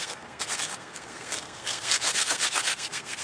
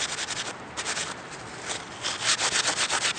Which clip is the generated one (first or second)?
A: first